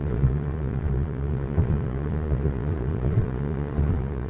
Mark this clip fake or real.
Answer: fake